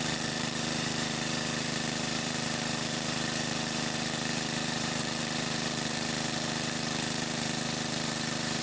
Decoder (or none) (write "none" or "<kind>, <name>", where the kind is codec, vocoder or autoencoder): vocoder, BigVGAN v2